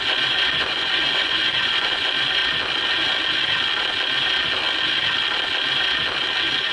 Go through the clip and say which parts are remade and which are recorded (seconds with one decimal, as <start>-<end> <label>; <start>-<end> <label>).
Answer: 0.0-2.4 remade; 2.4-6.7 recorded